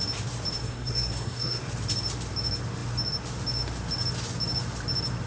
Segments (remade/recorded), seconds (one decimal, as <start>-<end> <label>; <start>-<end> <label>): 0.0-0.6 recorded; 0.6-1.6 remade; 1.6-5.3 recorded